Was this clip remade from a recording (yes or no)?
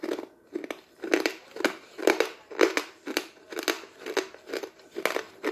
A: no